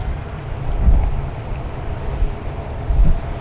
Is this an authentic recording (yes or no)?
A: no